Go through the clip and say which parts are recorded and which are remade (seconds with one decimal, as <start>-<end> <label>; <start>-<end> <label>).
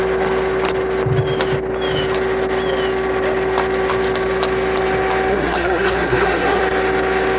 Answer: 0.0-5.3 recorded; 5.3-6.6 remade; 6.6-7.4 recorded